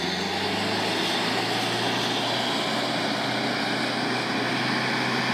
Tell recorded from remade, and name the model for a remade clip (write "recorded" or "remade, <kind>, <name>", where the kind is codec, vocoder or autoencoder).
recorded